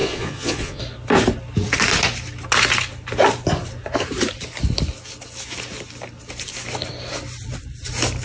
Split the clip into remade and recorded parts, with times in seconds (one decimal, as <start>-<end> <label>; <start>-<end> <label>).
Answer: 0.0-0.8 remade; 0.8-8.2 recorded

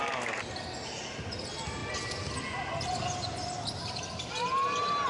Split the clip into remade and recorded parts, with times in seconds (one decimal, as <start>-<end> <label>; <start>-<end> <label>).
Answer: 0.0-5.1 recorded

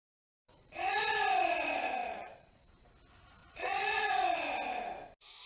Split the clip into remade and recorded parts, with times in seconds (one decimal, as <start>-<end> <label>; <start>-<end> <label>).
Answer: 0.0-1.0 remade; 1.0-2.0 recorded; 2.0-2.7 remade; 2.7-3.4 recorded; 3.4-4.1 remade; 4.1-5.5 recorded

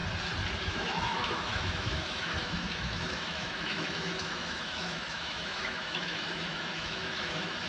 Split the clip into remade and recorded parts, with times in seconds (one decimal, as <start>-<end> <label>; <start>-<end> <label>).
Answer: 0.0-0.6 recorded; 0.6-7.7 remade

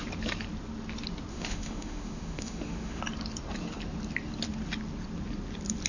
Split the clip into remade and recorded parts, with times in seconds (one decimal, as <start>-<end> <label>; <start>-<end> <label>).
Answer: 0.0-1.3 recorded; 1.3-3.0 remade; 3.0-5.9 recorded

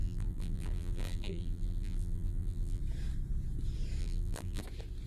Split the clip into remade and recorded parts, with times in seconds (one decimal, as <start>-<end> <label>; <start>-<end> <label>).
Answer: 0.0-2.8 remade; 2.8-4.0 recorded; 4.0-4.6 remade; 4.6-5.1 recorded